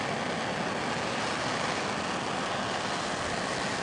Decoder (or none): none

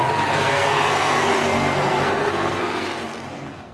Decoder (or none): codec, SNAC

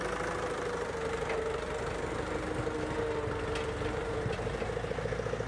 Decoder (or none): none